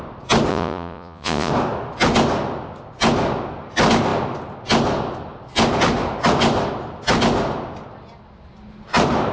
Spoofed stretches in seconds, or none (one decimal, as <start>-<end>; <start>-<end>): 0.5-1.5